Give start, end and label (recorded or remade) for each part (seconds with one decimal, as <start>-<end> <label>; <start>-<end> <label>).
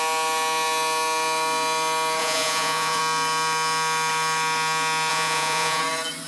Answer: 0.0-2.2 recorded; 2.2-3.0 remade; 3.0-5.1 recorded; 5.1-5.8 remade; 5.8-6.3 recorded